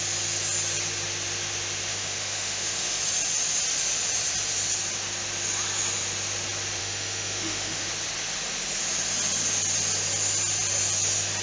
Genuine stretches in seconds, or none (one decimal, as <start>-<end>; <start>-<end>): 0.0-1.9; 3.0-6.8; 7.9-11.4